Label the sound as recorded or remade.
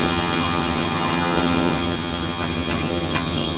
remade